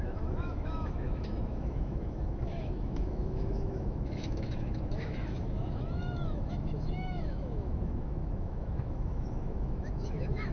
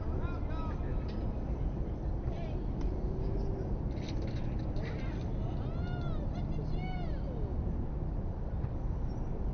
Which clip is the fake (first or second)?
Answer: first